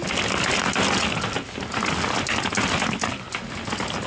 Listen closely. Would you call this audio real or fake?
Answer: real